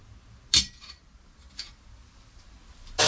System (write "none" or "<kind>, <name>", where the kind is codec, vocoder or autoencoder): none